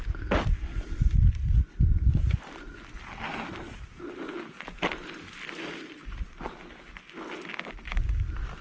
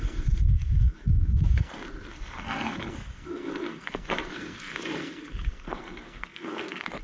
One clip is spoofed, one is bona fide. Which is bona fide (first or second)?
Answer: first